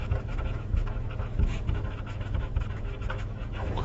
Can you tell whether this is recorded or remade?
remade